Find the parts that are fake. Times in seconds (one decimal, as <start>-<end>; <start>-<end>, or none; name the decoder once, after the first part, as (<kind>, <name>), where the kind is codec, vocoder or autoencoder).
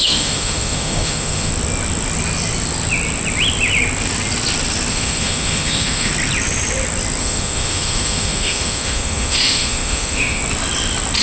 0.0-1.5 (autoencoder, DAC-VAE); 4.9-6.1; 7.2-10.4